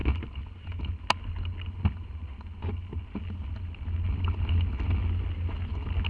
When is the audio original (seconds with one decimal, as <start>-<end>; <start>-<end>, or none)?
0.0-6.1